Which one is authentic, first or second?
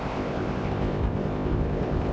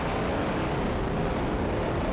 second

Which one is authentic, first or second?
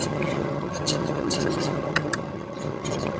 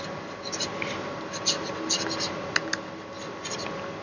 second